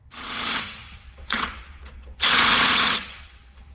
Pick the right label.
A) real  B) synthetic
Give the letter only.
B